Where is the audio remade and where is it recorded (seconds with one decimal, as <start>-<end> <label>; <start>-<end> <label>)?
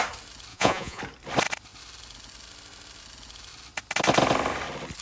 0.0-0.5 recorded; 0.5-1.0 remade; 1.0-5.0 recorded